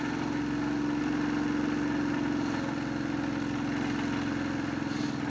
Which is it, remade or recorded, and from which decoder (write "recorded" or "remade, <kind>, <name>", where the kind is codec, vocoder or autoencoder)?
recorded